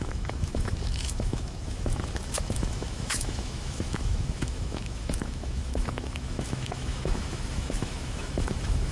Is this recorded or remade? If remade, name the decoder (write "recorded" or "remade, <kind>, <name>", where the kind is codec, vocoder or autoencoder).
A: remade, autoencoder, DAC-VAE